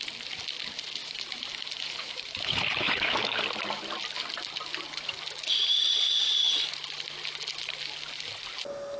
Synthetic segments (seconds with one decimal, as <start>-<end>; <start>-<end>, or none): 1.0-3.4